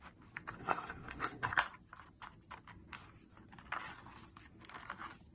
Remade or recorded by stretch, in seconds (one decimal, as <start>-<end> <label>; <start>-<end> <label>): 0.0-0.6 recorded; 0.6-1.6 remade; 1.6-5.3 recorded